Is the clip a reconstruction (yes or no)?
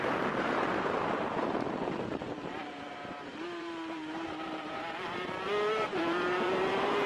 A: yes